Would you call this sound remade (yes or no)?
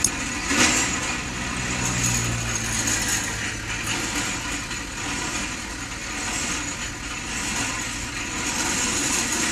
no